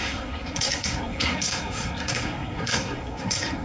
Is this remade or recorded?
remade